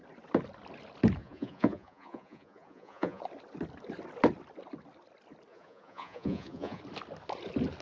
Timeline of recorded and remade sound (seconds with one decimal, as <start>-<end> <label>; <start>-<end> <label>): 0.0-1.2 recorded; 1.2-3.2 remade; 3.2-5.5 recorded; 5.5-6.8 remade; 6.8-7.8 recorded